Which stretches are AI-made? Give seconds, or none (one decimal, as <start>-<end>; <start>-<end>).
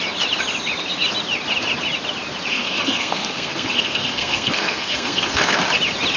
2.5-5.6